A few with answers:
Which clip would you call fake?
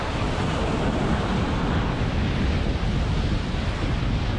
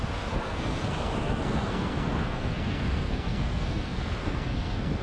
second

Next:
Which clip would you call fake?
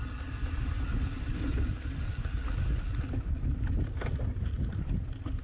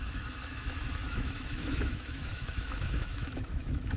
second